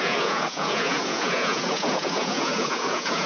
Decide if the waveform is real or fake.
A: fake